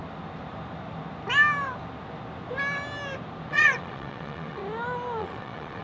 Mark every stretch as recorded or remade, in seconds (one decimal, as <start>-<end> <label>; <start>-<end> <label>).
0.0-3.5 recorded; 3.5-4.6 remade; 4.6-5.2 recorded; 5.2-5.8 remade